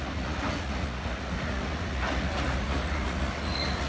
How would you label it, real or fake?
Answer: fake